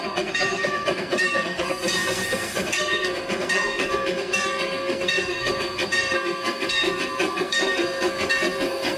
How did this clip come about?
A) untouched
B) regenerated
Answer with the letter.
B